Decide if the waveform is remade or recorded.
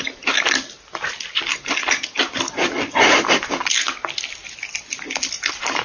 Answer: recorded